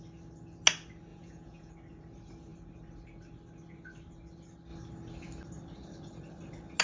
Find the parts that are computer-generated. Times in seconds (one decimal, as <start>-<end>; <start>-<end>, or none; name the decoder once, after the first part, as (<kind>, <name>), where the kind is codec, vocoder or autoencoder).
1.1-1.7 (vocoder, Vocos)